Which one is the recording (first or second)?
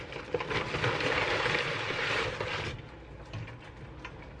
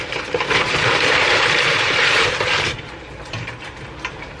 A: first